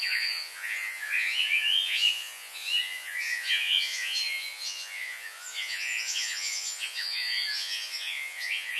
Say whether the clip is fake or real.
fake